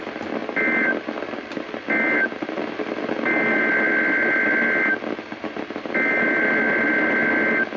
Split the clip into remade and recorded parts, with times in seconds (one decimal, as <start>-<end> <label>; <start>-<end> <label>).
0.0-7.8 recorded